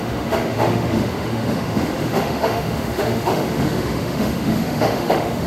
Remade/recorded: remade